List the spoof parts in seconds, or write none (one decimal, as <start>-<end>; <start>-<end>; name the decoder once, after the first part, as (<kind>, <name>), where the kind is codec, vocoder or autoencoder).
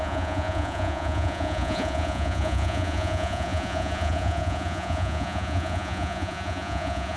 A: 0.0-7.2 (vocoder, Vocos)